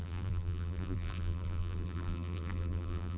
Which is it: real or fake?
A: fake